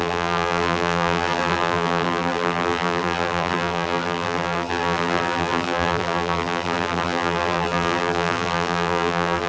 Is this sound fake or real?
fake